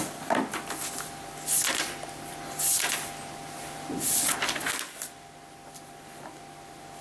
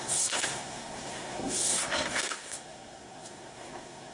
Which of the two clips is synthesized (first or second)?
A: second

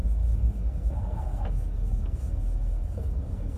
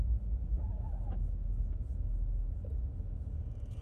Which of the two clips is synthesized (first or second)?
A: first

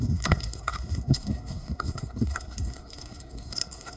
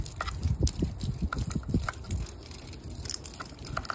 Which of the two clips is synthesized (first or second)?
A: first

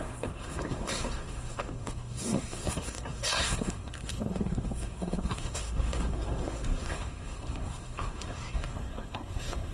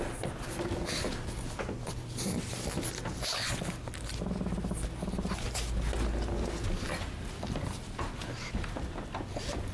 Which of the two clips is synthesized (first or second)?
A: first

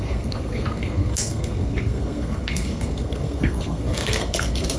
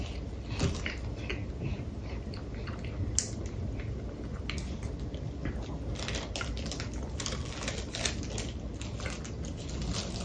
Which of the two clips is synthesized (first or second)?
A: first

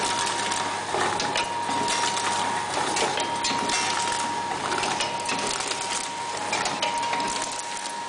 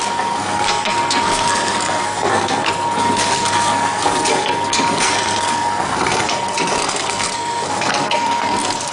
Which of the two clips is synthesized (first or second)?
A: second